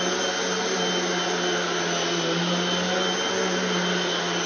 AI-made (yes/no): no